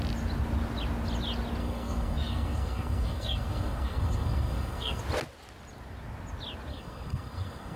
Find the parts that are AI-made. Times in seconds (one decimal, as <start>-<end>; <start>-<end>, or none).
1.6-5.0; 6.7-7.8

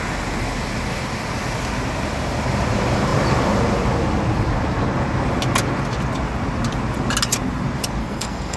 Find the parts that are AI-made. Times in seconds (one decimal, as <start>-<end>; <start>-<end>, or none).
8.0-8.6